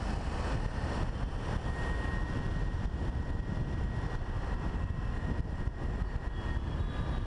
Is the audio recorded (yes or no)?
yes